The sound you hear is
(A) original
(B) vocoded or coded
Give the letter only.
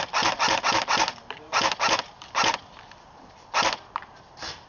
A